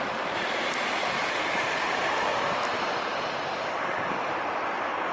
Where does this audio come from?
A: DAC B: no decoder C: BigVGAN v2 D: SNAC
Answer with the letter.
C